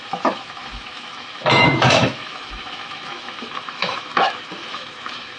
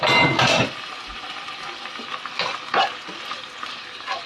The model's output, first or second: first